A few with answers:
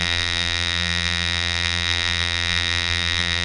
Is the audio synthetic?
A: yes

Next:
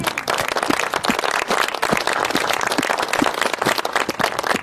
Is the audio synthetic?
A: no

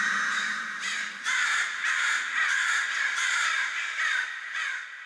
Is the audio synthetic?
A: yes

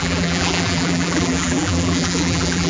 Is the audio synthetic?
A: yes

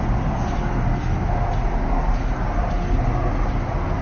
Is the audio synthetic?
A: no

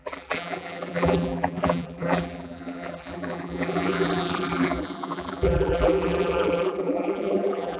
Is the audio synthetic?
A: yes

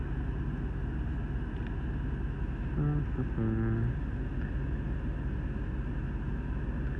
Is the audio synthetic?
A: no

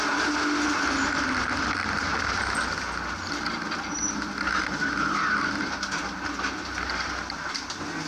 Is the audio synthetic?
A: no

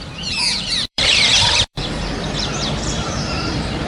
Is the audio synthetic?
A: yes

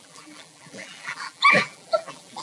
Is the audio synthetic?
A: yes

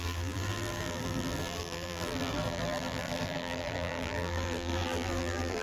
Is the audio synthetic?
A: yes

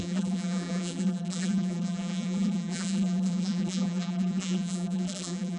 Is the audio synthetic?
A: yes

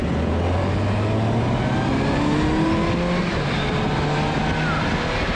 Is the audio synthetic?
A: no